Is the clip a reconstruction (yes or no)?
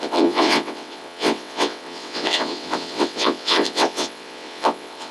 yes